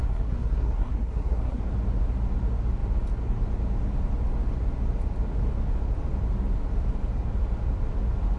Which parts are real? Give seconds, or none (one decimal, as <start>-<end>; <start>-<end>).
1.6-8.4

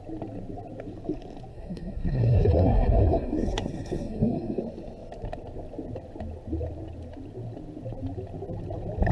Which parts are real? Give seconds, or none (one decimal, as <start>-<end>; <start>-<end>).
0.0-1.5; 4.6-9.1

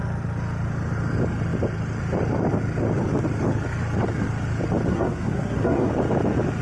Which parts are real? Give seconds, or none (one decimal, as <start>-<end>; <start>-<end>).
0.0-4.9; 5.9-6.6

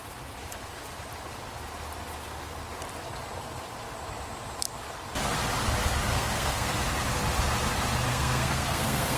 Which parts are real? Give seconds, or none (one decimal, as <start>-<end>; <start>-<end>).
0.0-6.1; 6.7-8.1

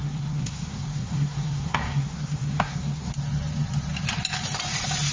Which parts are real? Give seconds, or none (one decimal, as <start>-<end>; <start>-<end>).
3.1-5.1